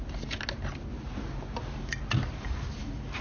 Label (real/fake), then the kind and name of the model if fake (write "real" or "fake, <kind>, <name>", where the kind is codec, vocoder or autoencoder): real